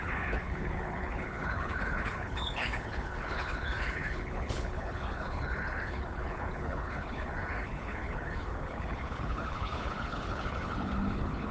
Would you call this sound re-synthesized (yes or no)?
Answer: yes